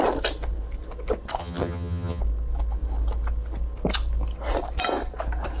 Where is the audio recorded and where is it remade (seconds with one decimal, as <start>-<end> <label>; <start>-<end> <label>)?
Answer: 0.0-1.4 recorded; 1.4-2.2 remade; 2.2-5.6 recorded